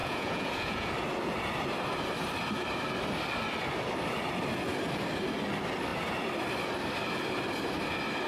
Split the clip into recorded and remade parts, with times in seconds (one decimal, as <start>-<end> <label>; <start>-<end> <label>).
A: 0.0-0.9 remade; 0.9-8.3 recorded